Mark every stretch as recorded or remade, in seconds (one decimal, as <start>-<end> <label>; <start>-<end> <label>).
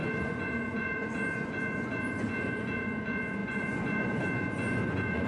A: 0.0-5.3 remade